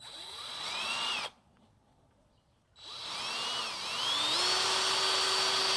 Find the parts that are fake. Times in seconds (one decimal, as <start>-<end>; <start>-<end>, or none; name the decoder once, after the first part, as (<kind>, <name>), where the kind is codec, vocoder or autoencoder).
0.0-2.7 (vocoder, Vocos)